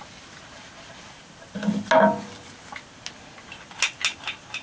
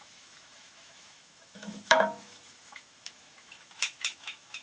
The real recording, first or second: first